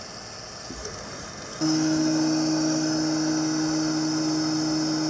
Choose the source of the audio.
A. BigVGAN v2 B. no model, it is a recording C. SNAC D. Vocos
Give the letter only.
B